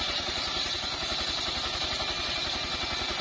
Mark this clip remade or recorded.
recorded